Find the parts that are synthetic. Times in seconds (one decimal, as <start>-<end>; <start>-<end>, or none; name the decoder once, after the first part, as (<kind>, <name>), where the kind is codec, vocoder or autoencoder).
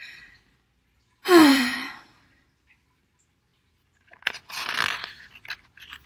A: 1.5-2.4 (vocoder, BigVGAN v2)